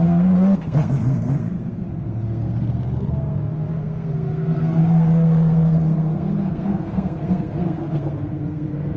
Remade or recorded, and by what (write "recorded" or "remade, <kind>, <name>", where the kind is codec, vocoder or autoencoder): remade, codec, SNAC